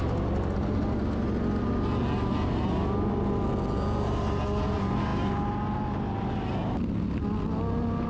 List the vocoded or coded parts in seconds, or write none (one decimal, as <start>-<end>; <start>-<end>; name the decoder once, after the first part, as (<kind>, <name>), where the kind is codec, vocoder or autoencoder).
none